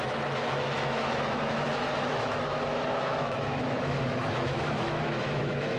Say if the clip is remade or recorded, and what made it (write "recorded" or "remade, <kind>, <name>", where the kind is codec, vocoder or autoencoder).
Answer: remade, autoencoder, DAC-VAE